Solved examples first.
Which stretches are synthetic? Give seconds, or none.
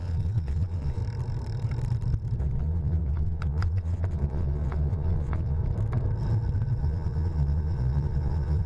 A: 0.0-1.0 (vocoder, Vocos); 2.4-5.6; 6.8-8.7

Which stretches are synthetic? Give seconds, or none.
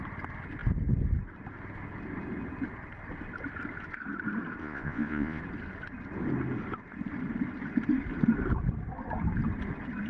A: 4.6-5.4 (vocoder, Vocos)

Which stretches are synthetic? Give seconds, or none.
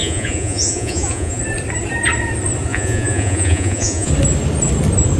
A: 0.0-1.4 (vocoder, Vocos); 2.7-4.1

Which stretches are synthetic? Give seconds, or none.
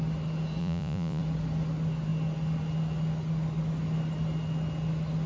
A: 0.6-1.2 (vocoder, Vocos)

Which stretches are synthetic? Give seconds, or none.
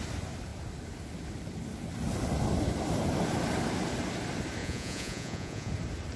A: 4.6-5.7 (vocoder, Vocos)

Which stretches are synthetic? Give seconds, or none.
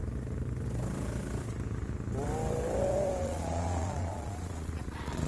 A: 3.2-5.3 (vocoder, Vocos)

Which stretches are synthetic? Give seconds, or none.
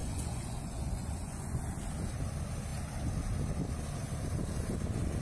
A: 0.0-1.6 (vocoder, Vocos)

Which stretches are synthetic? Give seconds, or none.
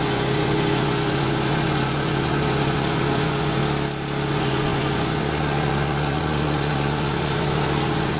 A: 0.0-3.6 (vocoder, Vocos); 4.3-8.2